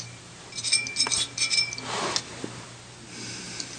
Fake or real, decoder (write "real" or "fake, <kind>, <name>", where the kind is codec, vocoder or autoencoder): real